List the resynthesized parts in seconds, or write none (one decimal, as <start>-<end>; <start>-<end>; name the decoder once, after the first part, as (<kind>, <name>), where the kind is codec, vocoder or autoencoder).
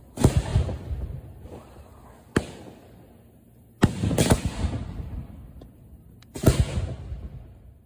none